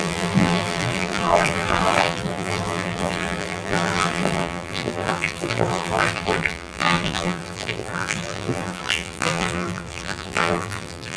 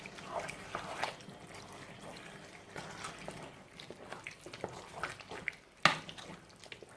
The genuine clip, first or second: second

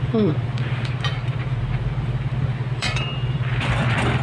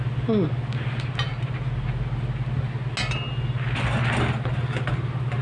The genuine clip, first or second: second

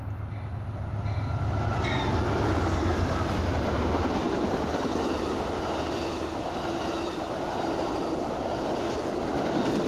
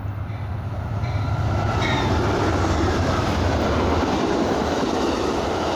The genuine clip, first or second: first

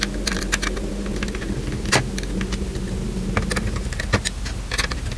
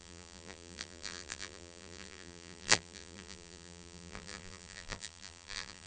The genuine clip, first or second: first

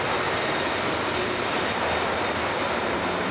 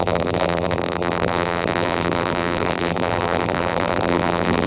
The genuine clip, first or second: first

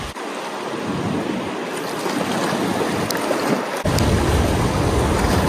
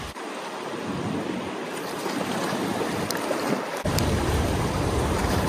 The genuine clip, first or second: first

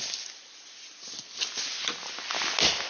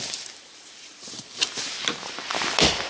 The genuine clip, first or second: first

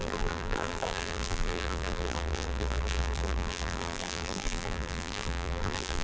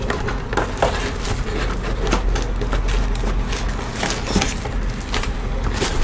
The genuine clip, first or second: second